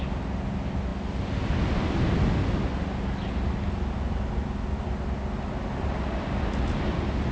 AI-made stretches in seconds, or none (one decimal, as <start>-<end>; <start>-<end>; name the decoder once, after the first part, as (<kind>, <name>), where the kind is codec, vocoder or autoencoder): none